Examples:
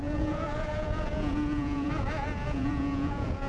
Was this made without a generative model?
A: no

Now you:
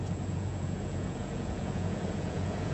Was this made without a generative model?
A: no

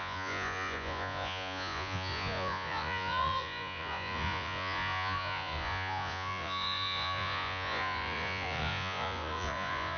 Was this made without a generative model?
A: no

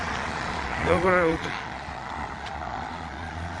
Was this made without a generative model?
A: no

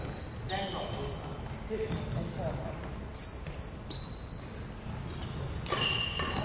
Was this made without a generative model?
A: yes